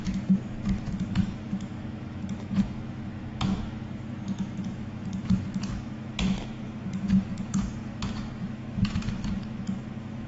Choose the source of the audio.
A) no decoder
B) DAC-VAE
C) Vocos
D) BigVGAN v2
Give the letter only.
B